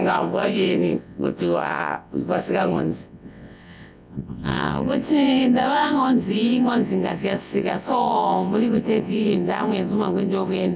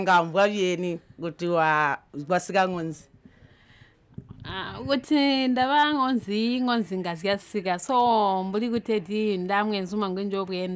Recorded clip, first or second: second